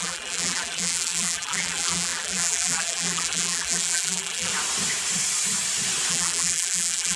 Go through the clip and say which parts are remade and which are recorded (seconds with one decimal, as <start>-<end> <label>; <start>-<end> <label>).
0.0-4.5 remade; 4.5-6.1 recorded; 6.1-7.2 remade